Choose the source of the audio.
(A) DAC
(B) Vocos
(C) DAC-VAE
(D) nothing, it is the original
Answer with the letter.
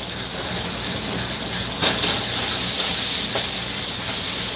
D